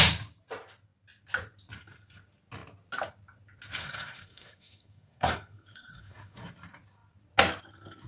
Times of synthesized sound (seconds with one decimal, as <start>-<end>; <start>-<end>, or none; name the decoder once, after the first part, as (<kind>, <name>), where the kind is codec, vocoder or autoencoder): 3.8-6.4 (codec, SNAC)